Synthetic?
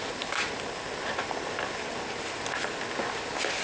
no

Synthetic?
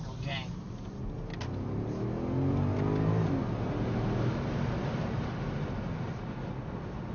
no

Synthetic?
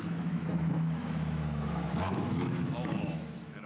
yes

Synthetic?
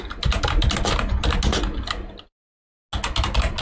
no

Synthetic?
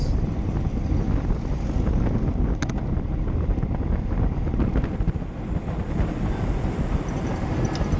no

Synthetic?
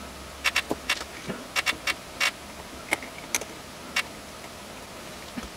no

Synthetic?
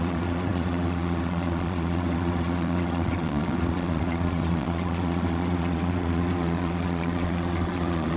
yes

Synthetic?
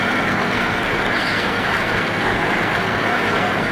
yes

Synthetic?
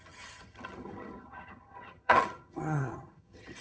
yes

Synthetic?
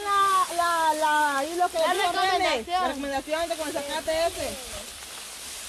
no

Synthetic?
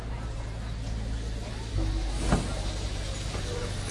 no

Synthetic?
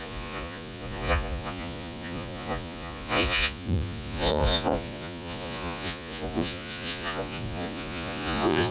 yes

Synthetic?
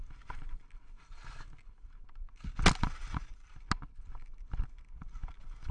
no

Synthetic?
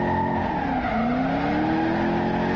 no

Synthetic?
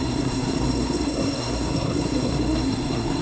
yes